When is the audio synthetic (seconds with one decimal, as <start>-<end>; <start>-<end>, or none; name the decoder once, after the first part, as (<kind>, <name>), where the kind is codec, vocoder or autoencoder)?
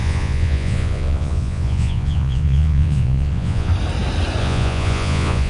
0.0-3.7 (vocoder, Vocos); 4.4-5.5